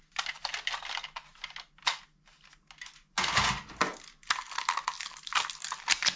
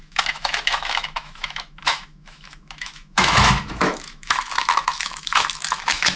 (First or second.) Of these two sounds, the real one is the first